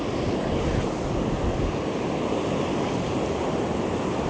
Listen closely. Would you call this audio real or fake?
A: real